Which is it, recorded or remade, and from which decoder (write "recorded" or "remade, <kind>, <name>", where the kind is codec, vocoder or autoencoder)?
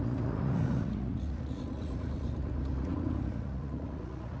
remade, vocoder, Vocos